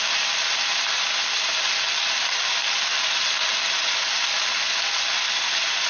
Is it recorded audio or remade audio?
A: recorded